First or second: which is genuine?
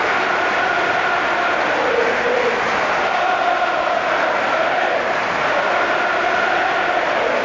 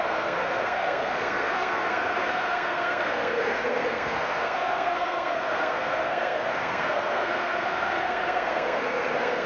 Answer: first